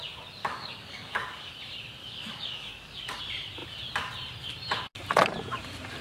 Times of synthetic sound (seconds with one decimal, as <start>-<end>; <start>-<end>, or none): 0.4-1.5; 2.0-3.2